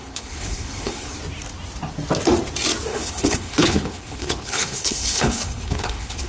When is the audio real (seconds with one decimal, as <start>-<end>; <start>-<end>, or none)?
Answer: 1.2-2.9